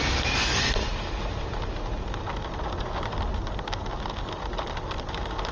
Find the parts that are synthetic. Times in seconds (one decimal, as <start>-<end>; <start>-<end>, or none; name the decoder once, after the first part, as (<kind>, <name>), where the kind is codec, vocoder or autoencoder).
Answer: 0.0-0.9 (vocoder, BigVGAN v2); 2.7-3.3; 5.0-5.5